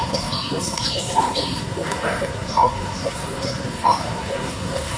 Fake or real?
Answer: fake